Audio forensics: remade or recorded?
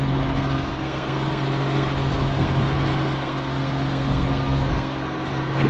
remade